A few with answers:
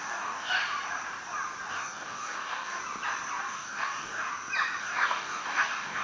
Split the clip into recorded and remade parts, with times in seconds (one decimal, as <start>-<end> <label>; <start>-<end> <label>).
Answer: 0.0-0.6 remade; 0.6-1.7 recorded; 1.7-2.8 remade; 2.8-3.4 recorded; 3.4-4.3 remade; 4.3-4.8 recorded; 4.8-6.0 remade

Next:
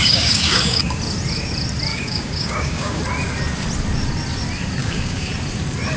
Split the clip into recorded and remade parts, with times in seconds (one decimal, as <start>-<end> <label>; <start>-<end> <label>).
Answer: 0.0-1.0 remade; 1.0-1.9 recorded; 1.9-3.0 remade; 3.0-4.8 recorded; 4.8-5.3 remade; 5.3-6.0 recorded

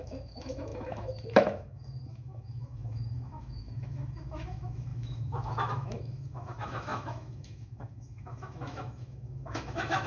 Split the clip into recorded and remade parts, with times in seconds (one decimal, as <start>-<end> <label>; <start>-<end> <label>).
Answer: 0.0-10.1 remade

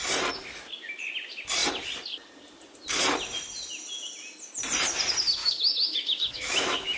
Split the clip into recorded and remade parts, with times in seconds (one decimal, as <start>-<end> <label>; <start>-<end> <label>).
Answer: 0.0-5.4 recorded; 5.4-7.0 remade

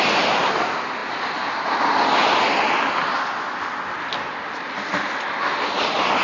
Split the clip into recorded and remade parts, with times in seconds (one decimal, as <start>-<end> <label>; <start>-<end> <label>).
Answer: 0.0-6.2 recorded

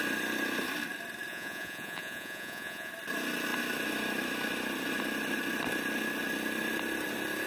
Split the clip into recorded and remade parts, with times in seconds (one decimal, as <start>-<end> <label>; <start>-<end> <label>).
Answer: 0.0-1.3 recorded; 1.3-2.9 remade; 2.9-7.5 recorded

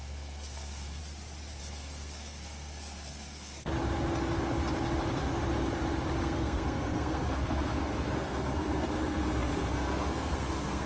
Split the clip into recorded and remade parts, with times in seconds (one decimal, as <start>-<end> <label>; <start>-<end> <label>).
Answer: 0.0-1.0 remade; 1.0-1.6 recorded; 1.6-3.7 remade; 3.7-6.2 recorded; 6.2-10.9 remade